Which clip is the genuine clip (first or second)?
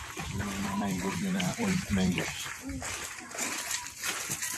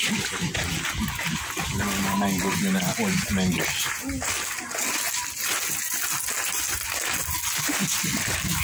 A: second